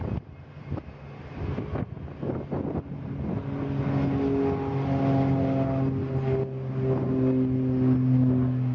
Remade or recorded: recorded